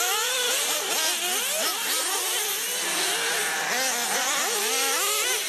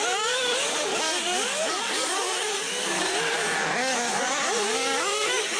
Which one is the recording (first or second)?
first